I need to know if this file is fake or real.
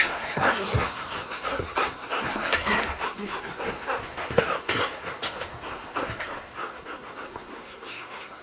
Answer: fake